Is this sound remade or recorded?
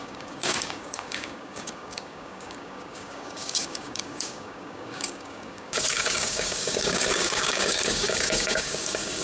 remade